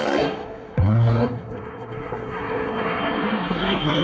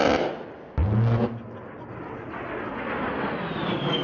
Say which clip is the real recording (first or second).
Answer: second